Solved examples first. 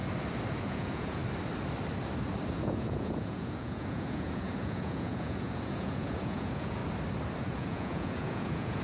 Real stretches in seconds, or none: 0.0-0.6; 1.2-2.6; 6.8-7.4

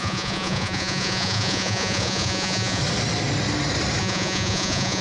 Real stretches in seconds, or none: 2.8-4.0